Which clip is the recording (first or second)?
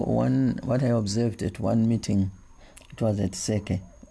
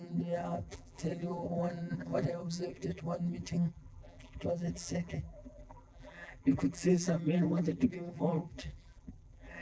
first